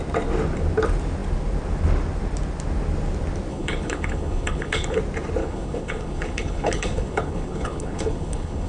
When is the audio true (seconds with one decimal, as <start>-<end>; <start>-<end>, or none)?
0.0-3.5; 5.0-5.4